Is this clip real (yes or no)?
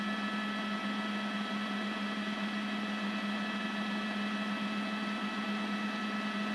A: yes